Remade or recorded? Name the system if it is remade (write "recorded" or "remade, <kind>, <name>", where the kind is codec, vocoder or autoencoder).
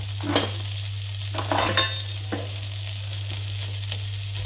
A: recorded